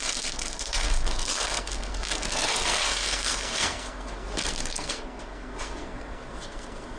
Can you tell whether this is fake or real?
fake